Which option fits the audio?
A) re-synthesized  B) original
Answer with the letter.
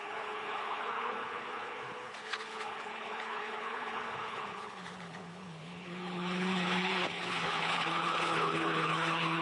A